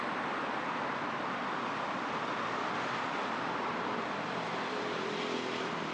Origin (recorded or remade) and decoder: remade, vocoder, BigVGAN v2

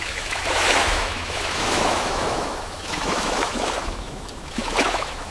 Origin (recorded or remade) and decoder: remade, autoencoder, DAC-VAE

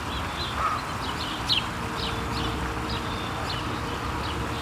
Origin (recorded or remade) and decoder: recorded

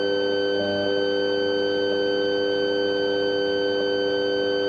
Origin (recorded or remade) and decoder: recorded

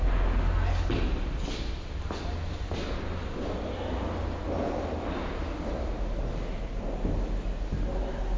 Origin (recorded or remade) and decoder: recorded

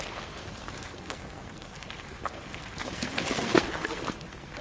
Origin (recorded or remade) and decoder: remade, codec, SNAC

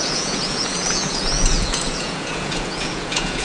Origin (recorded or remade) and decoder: remade, vocoder, Vocos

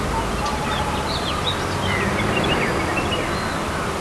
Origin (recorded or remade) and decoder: recorded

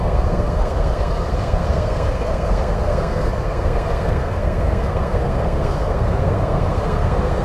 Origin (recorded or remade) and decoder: remade, codec, SNAC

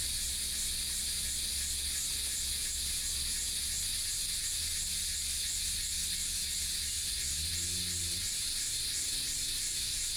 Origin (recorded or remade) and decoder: recorded